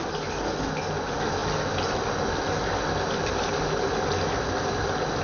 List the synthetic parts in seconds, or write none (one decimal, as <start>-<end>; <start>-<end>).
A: none